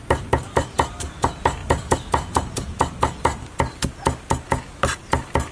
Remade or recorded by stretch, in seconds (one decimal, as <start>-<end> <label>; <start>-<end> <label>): 0.0-5.5 recorded